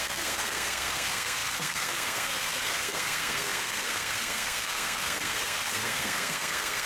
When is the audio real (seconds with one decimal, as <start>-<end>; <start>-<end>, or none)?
none